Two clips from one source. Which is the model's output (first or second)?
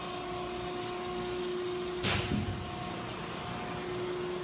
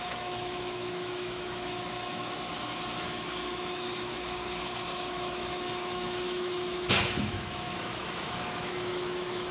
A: second